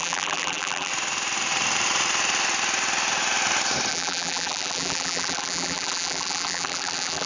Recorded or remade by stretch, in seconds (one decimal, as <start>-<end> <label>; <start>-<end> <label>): 0.0-0.9 remade; 0.9-3.9 recorded; 3.9-7.3 remade